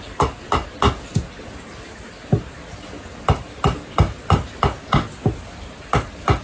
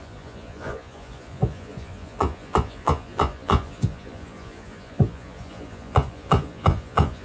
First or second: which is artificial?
second